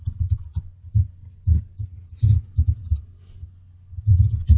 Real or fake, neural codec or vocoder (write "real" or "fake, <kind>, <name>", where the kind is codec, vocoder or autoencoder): real